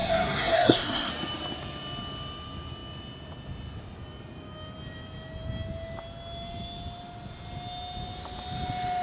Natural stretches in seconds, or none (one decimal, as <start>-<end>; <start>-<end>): 1.1-9.0